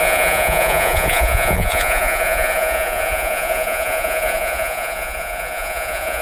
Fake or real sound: fake